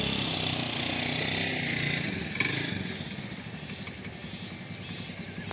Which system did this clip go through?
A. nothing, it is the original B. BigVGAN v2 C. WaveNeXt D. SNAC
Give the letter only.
A